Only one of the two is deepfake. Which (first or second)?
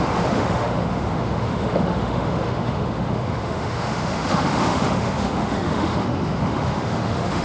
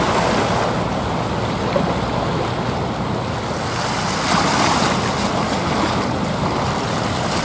first